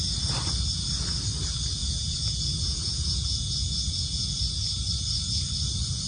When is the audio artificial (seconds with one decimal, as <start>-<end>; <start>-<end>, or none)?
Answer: 1.8-4.3